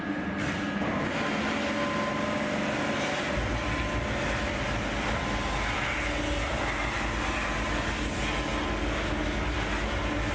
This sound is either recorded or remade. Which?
recorded